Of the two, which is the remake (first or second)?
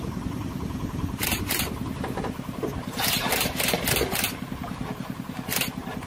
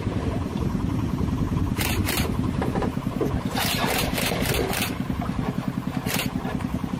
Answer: second